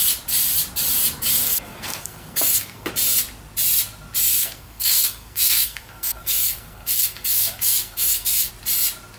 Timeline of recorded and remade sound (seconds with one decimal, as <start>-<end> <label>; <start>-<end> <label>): 0.0-1.4 recorded; 1.4-2.9 remade; 2.9-4.3 recorded; 4.3-8.5 remade; 8.5-9.2 recorded